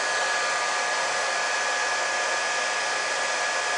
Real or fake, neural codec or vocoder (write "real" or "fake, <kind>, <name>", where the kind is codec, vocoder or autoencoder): real